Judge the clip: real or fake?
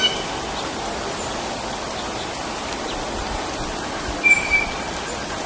fake